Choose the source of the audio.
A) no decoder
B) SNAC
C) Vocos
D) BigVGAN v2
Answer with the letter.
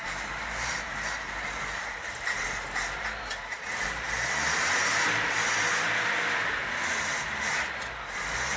A